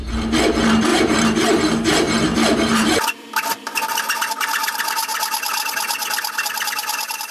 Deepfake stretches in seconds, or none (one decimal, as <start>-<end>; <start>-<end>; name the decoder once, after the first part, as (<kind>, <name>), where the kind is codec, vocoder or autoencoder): 0.9-3.9 (vocoder, BigVGAN v2); 4.6-5.3